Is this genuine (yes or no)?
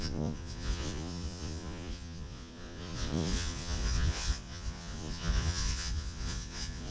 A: no